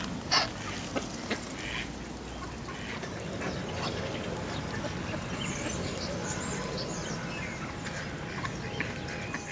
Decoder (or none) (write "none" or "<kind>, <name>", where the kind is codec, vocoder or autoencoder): none